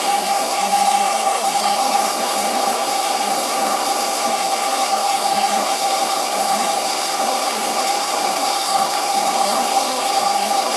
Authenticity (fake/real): fake